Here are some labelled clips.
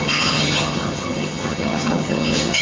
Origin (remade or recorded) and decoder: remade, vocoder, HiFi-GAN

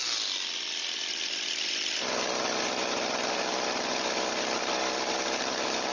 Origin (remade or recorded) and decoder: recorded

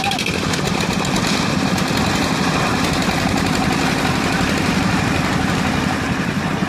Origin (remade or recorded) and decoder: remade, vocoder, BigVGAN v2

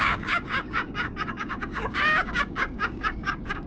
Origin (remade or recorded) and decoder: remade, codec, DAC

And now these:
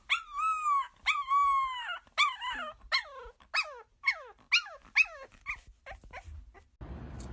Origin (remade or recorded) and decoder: recorded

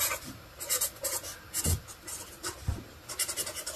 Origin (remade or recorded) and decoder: recorded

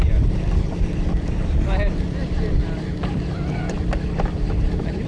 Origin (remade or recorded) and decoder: remade, vocoder, BigVGAN v2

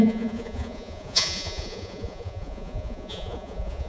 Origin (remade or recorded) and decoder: remade, vocoder, Vocos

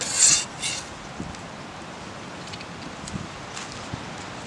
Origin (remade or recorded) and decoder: recorded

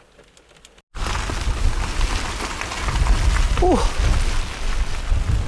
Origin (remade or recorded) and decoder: recorded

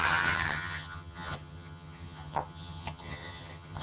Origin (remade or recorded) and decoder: remade, vocoder, HiFi-GAN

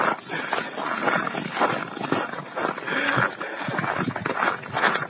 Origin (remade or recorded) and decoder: recorded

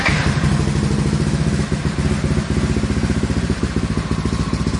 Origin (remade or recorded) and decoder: recorded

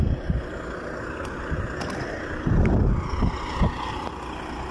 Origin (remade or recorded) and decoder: recorded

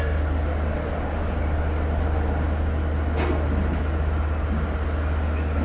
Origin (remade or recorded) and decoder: recorded